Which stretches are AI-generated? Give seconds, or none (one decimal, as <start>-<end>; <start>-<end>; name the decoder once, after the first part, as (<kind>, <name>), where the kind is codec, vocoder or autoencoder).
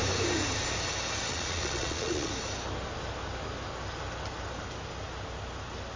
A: 1.3-2.3 (vocoder, Vocos)